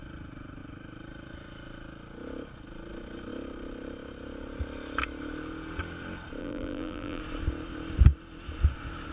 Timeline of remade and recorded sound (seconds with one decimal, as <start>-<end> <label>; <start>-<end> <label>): 0.0-6.4 recorded; 6.4-7.2 remade; 7.2-9.1 recorded